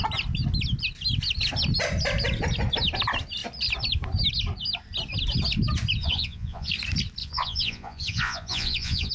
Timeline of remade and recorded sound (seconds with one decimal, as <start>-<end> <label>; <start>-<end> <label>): 0.0-6.0 recorded; 6.0-6.7 remade; 6.7-7.2 recorded; 7.2-9.1 remade